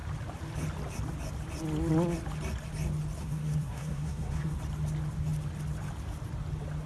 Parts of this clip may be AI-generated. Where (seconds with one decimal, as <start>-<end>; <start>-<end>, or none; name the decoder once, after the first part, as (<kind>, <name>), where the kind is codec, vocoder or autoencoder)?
3.2-4.6 (codec, SNAC)